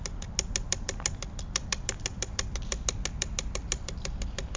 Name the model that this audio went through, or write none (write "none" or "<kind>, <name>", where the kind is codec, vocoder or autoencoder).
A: none